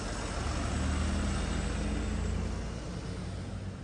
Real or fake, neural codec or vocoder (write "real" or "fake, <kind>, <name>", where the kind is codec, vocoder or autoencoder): real